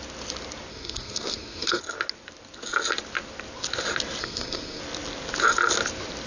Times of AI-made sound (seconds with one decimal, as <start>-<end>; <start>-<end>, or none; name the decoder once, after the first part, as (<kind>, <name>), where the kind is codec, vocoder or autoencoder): 0.7-1.8 (codec, SNAC); 4.2-4.8